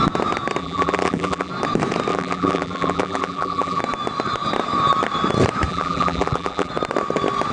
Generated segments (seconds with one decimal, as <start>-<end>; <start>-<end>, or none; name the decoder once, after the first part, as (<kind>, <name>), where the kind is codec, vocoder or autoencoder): 0.6-1.5 (vocoder, BigVGAN v2); 2.1-3.8; 5.7-6.7